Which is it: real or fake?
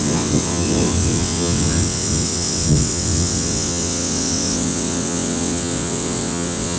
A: fake